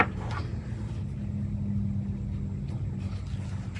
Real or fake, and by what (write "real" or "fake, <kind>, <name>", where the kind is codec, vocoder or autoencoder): real